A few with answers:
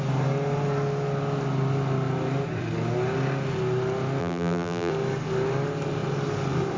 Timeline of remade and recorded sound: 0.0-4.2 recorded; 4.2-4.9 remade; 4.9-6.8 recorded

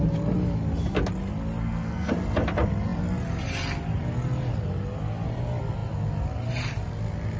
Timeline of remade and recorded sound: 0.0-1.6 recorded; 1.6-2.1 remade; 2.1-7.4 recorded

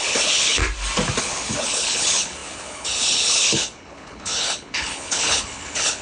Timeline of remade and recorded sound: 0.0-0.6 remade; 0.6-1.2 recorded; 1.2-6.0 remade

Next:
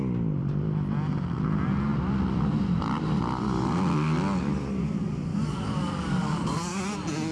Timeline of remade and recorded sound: 0.0-5.3 recorded; 5.3-6.8 remade; 6.8-7.3 recorded

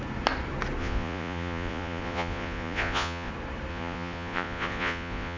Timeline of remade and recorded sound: 0.0-0.8 recorded; 0.8-3.3 remade; 3.3-3.7 recorded; 3.7-5.4 remade

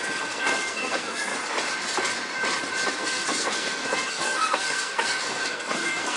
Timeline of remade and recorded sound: 0.0-1.3 remade; 1.3-2.9 recorded; 2.9-6.2 remade

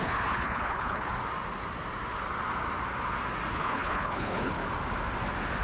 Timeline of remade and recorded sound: 0.0-1.1 remade; 1.1-3.5 recorded; 3.5-4.6 remade; 4.6-5.6 recorded